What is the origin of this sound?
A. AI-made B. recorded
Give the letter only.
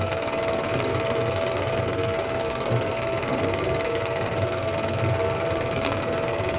A